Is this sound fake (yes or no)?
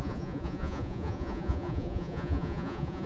yes